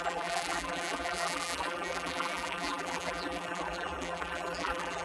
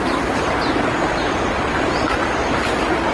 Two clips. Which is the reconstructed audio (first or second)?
first